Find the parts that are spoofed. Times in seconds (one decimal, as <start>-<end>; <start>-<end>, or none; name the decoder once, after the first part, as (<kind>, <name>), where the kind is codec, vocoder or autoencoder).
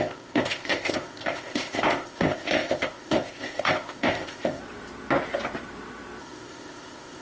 0.0-4.6 (codec, ZipCodec); 6.2-7.2